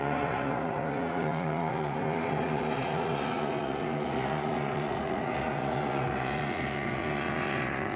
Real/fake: fake